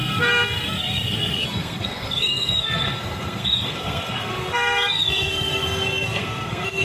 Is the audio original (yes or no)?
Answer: no